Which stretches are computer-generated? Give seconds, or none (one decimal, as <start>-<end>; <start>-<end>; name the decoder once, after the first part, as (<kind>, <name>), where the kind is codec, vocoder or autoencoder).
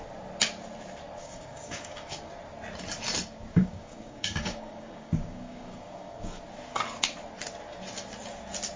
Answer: 1.2-2.3 (codec, DAC); 3.5-6.4